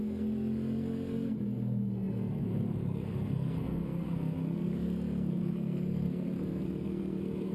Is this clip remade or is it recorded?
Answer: remade